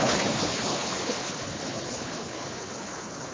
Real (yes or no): no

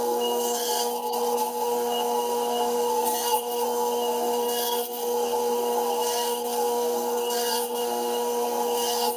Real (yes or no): no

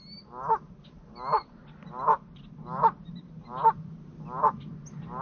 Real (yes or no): yes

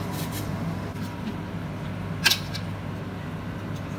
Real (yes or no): yes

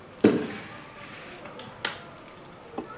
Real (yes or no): yes